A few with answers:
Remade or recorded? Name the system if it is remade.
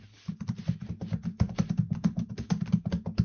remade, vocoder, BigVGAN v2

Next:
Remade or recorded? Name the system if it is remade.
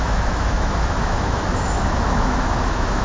remade, autoencoder, DAC-VAE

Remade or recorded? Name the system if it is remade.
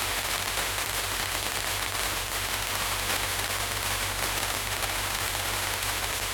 remade, autoencoder, DAC-VAE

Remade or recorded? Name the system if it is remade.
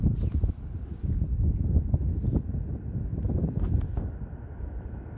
recorded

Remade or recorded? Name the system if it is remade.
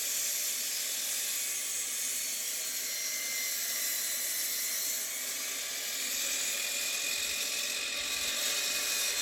recorded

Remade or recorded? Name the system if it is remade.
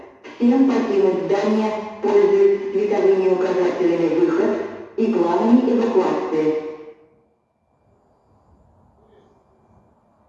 recorded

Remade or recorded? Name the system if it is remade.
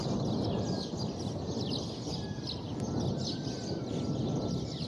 recorded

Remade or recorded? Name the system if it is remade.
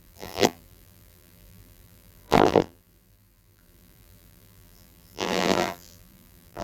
remade, vocoder, BigVGAN v2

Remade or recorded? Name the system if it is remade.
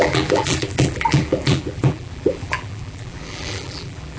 remade, vocoder, BigVGAN v2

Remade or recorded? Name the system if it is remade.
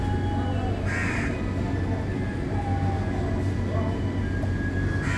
recorded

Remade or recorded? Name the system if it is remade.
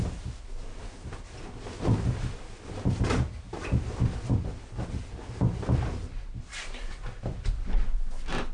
recorded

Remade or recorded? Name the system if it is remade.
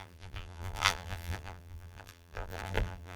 remade, vocoder, BigVGAN v2